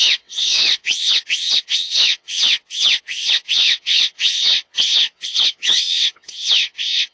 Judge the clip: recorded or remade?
remade